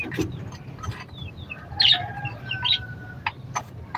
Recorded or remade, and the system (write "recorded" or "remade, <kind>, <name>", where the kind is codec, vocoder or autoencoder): recorded